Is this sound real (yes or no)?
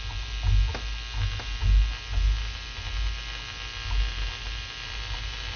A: yes